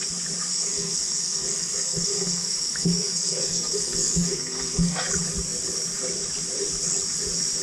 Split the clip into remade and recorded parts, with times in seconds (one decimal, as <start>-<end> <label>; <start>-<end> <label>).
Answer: 0.0-0.5 recorded; 0.5-5.1 remade; 5.1-7.6 recorded